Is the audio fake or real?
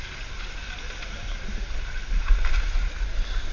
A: real